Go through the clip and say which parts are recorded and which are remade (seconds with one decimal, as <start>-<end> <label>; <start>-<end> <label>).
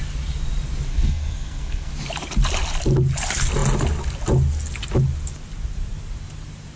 0.0-0.9 recorded; 0.9-1.9 remade; 1.9-6.8 recorded